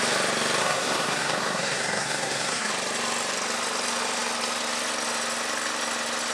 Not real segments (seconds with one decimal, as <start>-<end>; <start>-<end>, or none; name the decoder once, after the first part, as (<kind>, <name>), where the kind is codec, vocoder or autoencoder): 0.6-2.7 (codec, SNAC)